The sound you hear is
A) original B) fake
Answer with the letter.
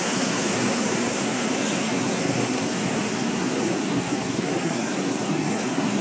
B